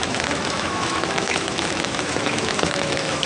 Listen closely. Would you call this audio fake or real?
fake